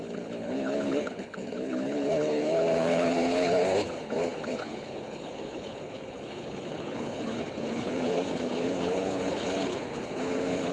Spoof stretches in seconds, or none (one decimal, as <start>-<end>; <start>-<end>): 0.0-10.7